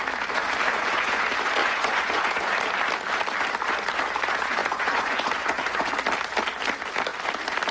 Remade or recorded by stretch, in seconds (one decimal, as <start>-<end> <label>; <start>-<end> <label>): 0.0-0.7 recorded; 0.7-1.2 remade; 1.2-1.6 recorded; 1.6-2.5 remade; 2.5-4.6 recorded; 4.6-5.9 remade; 5.9-7.7 recorded